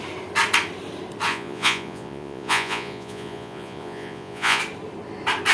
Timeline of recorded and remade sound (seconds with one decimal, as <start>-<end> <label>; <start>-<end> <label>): 0.0-1.3 recorded; 1.3-4.6 remade; 4.6-5.5 recorded